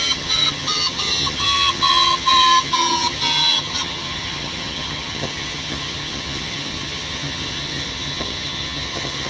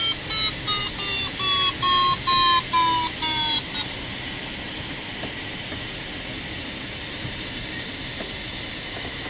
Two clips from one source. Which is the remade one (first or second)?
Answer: first